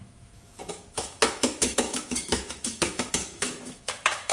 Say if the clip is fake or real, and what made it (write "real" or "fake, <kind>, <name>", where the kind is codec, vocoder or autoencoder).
fake, autoencoder, DAC-VAE